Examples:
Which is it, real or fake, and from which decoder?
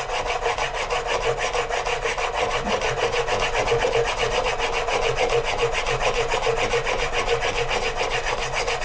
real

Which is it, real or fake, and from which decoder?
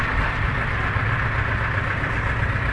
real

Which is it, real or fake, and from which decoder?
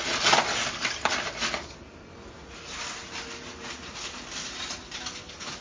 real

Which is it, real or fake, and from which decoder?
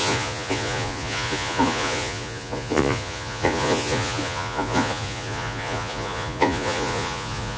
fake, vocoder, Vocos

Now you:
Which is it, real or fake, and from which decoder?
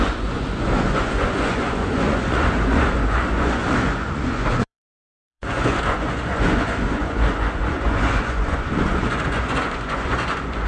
fake, vocoder, Vocos